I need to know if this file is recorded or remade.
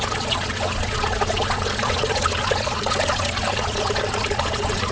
remade